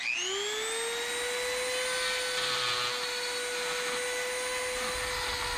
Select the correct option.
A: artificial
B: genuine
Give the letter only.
B